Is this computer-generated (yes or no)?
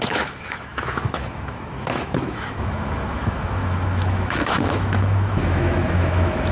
yes